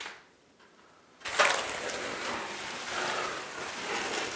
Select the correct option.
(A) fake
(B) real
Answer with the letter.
B